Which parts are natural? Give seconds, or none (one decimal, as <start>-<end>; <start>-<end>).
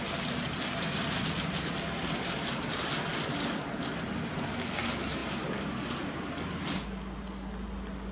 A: 0.0-5.2; 5.7-8.1